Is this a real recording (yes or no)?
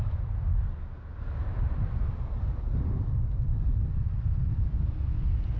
yes